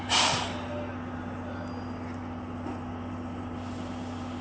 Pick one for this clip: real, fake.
real